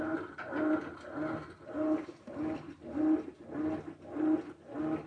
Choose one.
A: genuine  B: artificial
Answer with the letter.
A